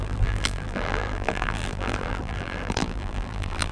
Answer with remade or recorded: remade